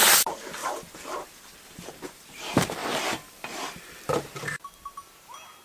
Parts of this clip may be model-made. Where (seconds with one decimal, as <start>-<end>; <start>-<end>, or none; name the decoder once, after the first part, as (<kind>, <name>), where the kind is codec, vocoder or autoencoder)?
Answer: 0.6-1.9 (vocoder, BigVGAN v2); 2.8-4.4